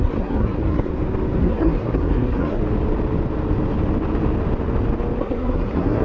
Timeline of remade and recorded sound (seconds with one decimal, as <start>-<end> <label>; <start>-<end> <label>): 0.0-0.9 remade; 0.9-1.4 recorded; 1.4-2.6 remade; 2.6-5.2 recorded; 5.2-6.0 remade